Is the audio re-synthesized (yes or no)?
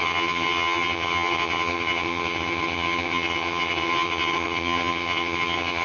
yes